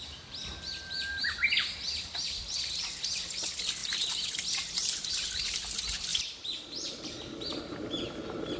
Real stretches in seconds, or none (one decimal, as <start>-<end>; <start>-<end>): 0.0-3.8; 4.3-6.1; 8.0-8.6